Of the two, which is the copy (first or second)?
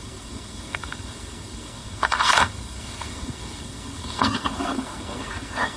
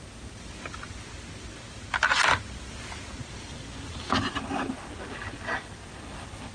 first